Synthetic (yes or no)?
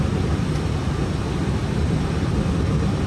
no